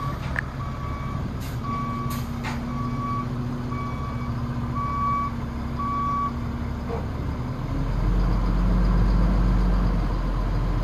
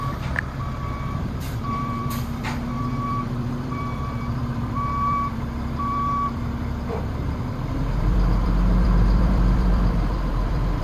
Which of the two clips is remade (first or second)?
second